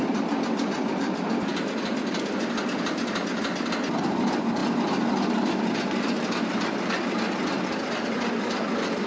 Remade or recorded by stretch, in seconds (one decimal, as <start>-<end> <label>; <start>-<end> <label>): 0.0-9.1 recorded